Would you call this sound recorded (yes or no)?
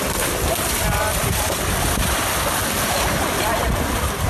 yes